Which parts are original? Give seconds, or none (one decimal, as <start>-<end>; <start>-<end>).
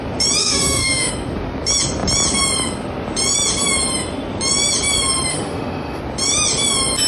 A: 0.0-0.4; 1.1-5.3; 6.0-7.1